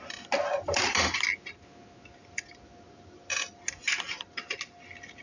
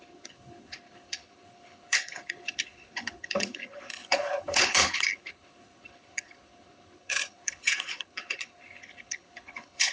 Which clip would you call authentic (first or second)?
first